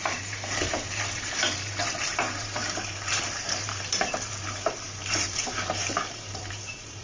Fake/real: fake